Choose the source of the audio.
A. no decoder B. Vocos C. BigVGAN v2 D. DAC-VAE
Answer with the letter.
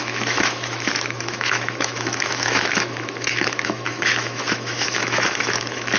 D